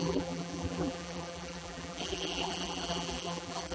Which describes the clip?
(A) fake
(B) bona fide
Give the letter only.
A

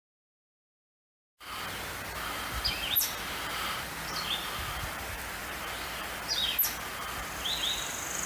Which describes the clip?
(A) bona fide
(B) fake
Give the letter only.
A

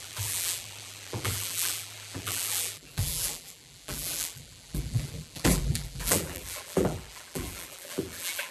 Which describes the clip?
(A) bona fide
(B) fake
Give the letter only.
B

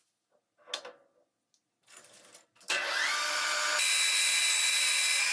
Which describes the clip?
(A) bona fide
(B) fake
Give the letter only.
A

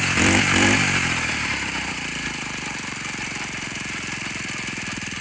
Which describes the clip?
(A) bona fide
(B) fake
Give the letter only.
B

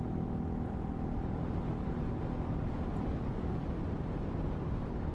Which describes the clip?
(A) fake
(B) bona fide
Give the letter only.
B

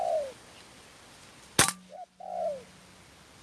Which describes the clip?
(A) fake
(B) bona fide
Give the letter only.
B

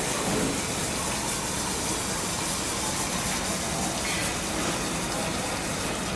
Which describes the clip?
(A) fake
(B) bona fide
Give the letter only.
B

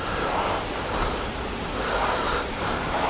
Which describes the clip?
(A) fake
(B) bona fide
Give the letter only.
A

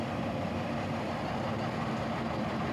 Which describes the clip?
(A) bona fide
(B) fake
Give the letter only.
B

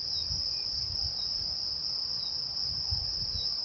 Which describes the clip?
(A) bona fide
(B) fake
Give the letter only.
A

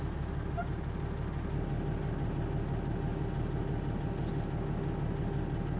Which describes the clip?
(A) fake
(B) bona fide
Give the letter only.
B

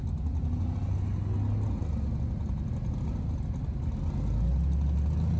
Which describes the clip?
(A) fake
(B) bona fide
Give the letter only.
B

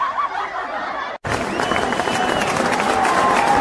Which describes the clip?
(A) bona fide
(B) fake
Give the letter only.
A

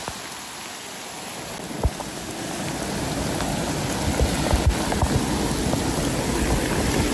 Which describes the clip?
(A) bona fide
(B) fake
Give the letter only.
A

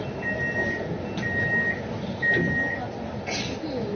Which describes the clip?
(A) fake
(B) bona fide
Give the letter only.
B